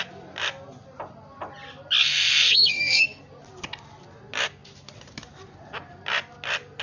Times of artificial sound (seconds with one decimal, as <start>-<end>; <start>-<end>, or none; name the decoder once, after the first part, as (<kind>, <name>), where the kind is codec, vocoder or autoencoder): 2.0-3.2 (codec, SNAC)